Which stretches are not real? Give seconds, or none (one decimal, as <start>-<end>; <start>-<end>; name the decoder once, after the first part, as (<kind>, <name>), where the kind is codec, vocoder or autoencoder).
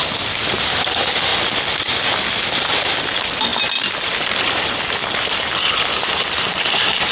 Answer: 3.5-5.8 (vocoder, BigVGAN v2)